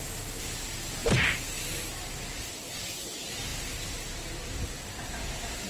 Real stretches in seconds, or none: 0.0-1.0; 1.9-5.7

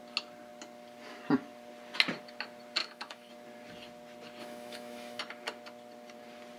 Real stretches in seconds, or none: 0.0-2.8; 3.3-4.4; 5.2-6.6

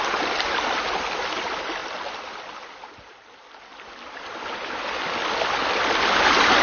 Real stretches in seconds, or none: 0.0-6.6